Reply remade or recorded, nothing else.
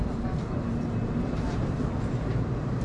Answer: remade